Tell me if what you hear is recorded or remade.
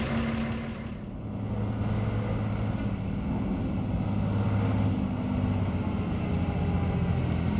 recorded